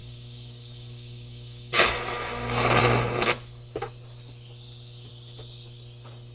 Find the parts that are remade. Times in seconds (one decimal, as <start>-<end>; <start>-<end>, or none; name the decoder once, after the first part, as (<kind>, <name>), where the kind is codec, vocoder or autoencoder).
0.0-1.9 (codec, DAC)